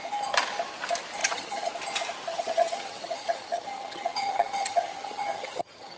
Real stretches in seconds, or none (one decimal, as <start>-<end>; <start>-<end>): 0.0-1.2; 1.7-2.3